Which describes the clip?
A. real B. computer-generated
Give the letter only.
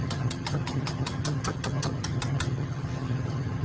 B